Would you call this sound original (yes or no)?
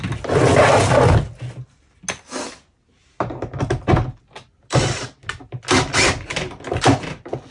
yes